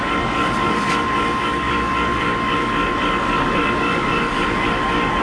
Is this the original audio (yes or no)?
no